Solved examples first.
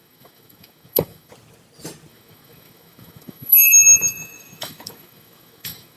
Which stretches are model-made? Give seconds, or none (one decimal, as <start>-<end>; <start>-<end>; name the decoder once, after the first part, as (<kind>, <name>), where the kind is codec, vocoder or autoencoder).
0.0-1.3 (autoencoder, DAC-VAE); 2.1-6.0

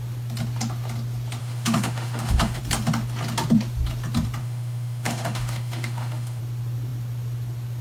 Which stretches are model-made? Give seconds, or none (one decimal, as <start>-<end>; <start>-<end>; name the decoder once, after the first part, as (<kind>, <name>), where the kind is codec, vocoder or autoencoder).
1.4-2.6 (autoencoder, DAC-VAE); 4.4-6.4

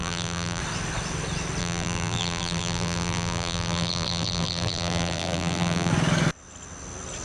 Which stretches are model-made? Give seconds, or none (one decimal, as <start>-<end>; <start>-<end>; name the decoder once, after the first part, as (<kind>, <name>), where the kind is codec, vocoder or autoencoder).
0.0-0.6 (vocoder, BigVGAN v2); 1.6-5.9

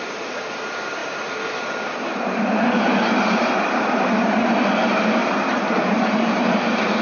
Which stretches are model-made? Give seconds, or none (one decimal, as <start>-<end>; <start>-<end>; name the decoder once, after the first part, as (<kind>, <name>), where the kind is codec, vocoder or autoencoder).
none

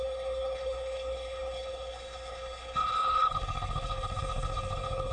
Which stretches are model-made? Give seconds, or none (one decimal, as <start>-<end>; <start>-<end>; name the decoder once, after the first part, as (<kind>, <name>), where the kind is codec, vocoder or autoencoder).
0.0-5.1 (codec, HILCodec)

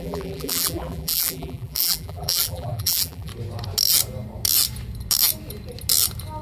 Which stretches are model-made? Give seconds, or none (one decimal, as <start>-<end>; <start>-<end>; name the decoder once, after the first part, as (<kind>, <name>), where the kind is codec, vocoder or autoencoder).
0.0-3.3 (vocoder, BigVGAN v2)

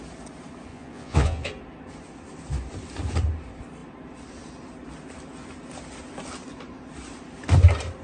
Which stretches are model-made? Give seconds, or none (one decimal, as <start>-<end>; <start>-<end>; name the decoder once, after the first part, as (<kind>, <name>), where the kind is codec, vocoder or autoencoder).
0.7-1.5 (vocoder, Vocos)

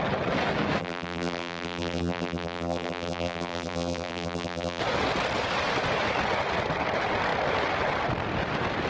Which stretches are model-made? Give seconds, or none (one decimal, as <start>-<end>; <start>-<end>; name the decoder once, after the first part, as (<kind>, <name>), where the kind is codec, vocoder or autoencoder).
0.8-4.8 (vocoder, BigVGAN v2)